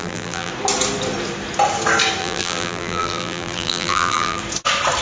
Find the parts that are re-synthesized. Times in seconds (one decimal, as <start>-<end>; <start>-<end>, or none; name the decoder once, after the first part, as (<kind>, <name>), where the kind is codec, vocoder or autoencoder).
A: 0.0-0.5 (vocoder, BigVGAN v2); 2.2-4.4